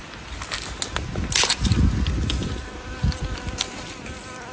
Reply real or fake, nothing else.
real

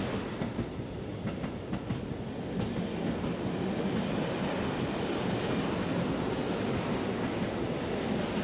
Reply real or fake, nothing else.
real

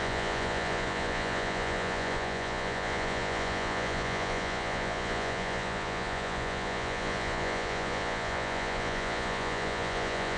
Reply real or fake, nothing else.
fake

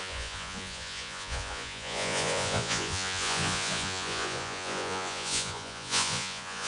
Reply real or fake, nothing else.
fake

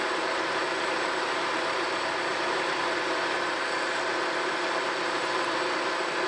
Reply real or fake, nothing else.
real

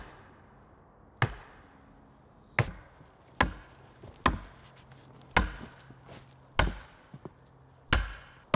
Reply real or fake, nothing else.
real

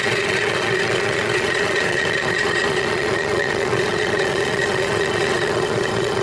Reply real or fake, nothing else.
fake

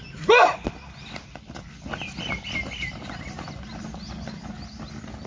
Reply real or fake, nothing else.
real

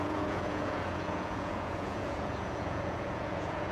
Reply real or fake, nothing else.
fake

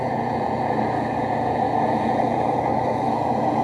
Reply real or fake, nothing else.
fake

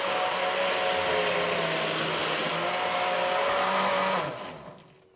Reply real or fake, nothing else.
real